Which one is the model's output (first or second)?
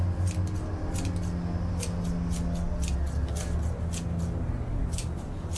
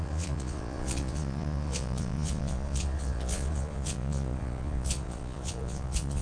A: second